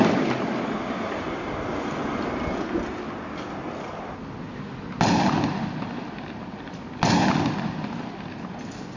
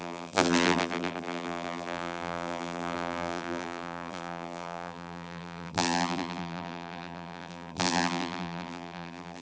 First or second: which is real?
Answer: first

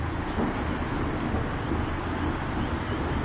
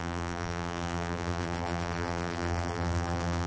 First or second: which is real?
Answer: first